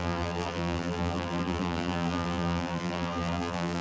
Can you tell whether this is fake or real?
fake